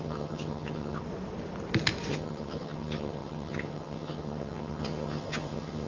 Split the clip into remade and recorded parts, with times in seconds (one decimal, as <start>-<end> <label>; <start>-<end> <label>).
0.0-1.0 remade; 1.0-2.1 recorded; 2.1-5.9 remade